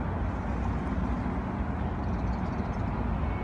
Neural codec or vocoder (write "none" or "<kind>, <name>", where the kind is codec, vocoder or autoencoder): none